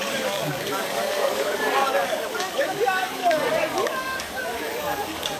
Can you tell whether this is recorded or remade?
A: remade